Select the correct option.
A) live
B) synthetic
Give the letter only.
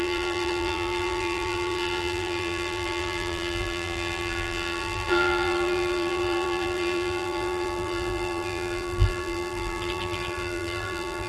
B